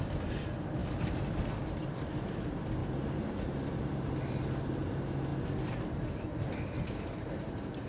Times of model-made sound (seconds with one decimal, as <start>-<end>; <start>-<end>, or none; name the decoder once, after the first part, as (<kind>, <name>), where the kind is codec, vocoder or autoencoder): none